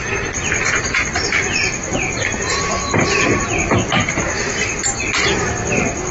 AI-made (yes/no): no